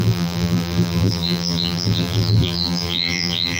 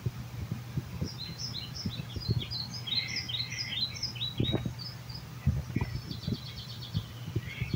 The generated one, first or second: first